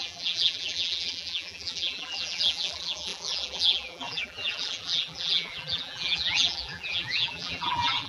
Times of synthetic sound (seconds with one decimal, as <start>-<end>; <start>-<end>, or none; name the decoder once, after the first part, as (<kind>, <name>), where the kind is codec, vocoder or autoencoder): 0.0-8.1 (vocoder, BigVGAN v2)